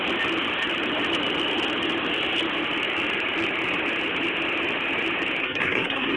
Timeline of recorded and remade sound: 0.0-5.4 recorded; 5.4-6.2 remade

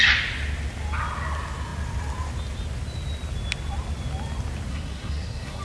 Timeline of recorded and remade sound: 0.0-4.7 recorded; 4.7-5.6 remade

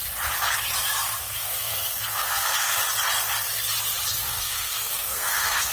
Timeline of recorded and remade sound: 0.0-1.2 recorded; 1.2-2.8 remade; 2.8-4.3 recorded; 4.3-5.7 remade

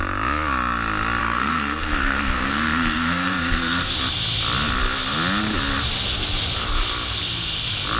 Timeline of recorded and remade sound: 0.0-1.2 recorded; 1.2-3.9 remade; 3.9-8.0 recorded

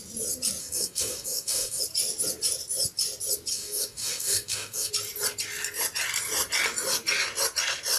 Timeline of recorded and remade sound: 0.0-0.6 recorded; 0.6-1.8 remade; 1.8-3.5 recorded; 3.5-4.9 remade; 4.9-8.0 recorded

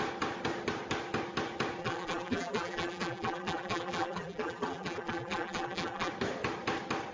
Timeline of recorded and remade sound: 0.0-1.8 recorded; 1.8-6.1 remade; 6.1-7.1 recorded

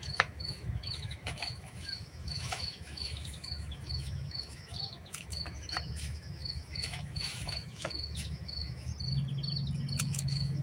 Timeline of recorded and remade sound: 0.0-8.9 remade; 8.9-10.0 recorded; 10.0-10.6 remade